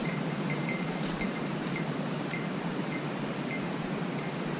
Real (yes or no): no